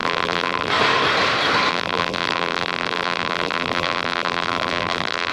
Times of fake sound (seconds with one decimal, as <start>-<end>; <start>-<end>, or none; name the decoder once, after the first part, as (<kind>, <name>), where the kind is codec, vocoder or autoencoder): 0.0-0.7 (vocoder, BigVGAN v2); 1.7-5.3